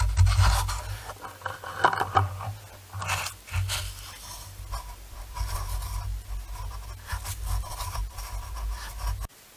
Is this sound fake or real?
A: real